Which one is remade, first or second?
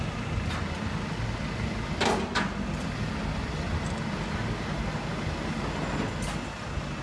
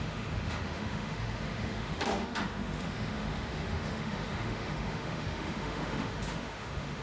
second